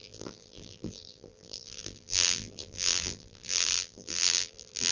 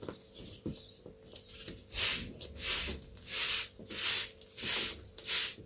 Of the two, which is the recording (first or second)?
second